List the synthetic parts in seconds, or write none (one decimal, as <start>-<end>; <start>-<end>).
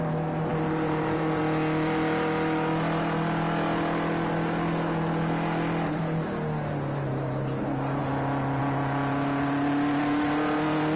0.5-1.4